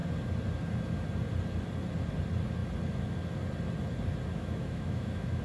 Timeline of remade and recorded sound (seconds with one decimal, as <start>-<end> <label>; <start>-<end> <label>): 0.0-4.3 recorded; 4.3-5.4 remade